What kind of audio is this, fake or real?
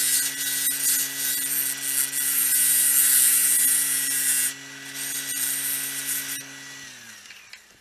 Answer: real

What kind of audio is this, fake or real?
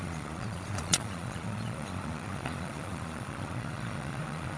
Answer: fake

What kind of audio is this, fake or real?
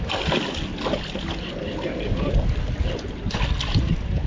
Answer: real